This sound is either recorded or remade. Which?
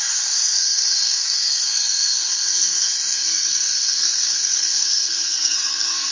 remade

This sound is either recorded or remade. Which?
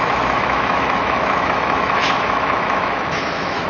remade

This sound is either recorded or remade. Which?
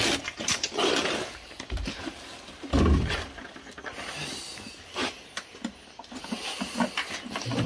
recorded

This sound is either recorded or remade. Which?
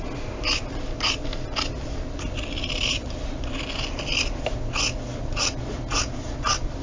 recorded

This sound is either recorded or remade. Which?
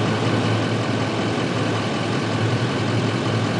recorded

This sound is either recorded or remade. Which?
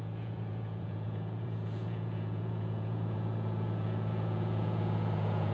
remade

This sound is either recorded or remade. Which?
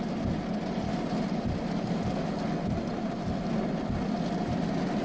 recorded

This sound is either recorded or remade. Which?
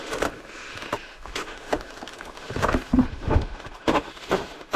remade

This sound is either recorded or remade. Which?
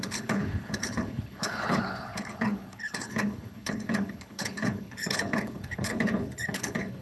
remade